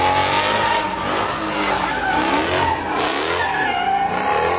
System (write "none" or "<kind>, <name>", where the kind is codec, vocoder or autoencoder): none